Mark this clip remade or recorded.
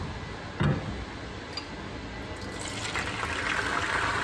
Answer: recorded